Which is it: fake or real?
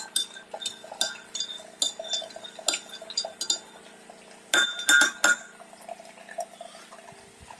real